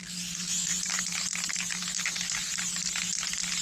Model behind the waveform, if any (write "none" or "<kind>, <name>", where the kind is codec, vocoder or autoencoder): none